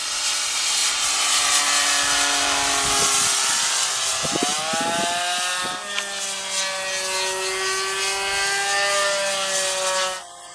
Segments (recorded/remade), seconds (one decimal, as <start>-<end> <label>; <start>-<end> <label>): 0.0-0.8 recorded; 0.8-1.6 remade; 1.6-10.5 recorded